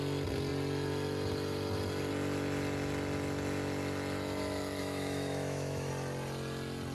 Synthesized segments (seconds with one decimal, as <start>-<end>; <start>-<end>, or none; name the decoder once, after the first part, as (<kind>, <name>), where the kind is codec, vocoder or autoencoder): 4.8-5.9 (autoencoder, DAC-VAE)